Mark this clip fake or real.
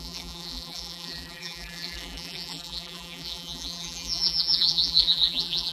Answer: fake